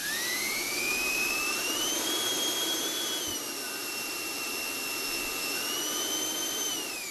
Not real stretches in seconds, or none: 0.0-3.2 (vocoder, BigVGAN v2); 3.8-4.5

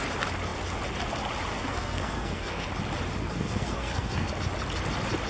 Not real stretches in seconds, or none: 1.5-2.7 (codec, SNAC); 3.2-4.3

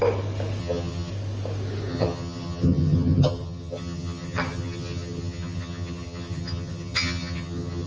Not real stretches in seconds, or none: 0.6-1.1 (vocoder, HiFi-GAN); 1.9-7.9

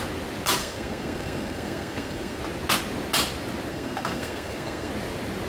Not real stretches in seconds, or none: 0.6-2.4 (codec, SNAC); 3.7-4.9

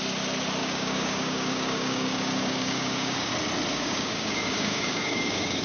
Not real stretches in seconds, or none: 0.6-3.3 (codec, DAC); 3.7-5.6

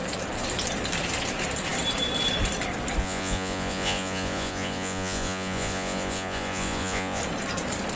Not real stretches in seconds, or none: 3.0-7.2 (vocoder, Vocos)